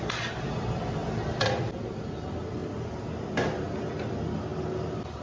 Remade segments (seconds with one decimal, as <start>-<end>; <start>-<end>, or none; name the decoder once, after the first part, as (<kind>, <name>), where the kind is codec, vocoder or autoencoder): 0.0-1.0 (vocoder, BigVGAN v2); 1.6-2.6; 3.9-5.2